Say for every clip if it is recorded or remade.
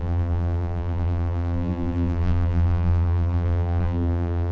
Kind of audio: remade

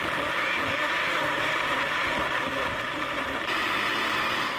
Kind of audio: remade